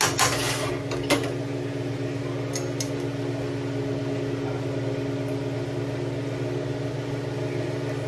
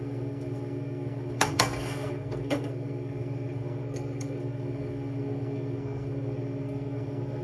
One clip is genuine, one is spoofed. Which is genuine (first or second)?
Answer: first